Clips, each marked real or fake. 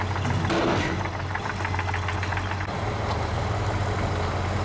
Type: real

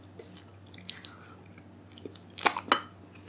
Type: real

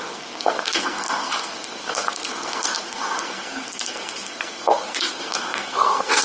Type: fake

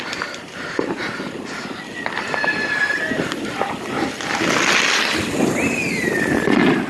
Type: real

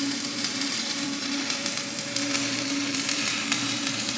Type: fake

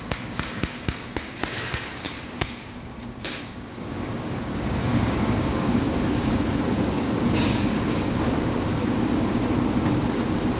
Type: fake